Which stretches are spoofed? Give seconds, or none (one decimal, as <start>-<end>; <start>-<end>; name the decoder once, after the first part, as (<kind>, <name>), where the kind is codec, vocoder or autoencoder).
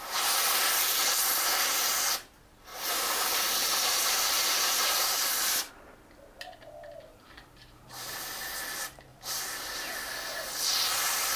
2.7-5.7 (vocoder, BigVGAN v2); 7.1-8.2; 9.1-9.9